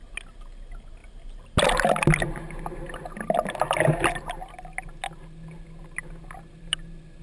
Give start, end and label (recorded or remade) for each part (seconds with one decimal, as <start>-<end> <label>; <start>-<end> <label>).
0.0-7.2 recorded